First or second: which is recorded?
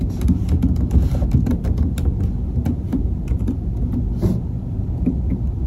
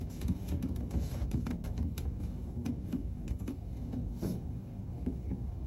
first